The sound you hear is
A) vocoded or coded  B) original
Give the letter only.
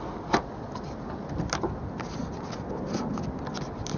B